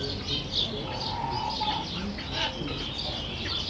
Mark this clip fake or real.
real